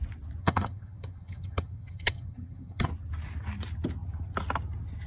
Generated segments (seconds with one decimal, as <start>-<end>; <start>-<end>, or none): 0.4-2.9